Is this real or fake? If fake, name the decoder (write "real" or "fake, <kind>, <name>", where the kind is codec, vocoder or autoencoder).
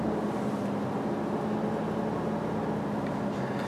real